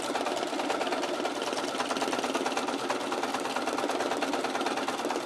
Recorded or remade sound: recorded